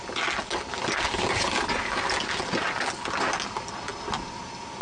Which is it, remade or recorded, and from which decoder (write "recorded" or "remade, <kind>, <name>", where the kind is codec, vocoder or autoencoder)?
recorded